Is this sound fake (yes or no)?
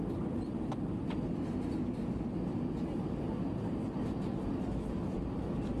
no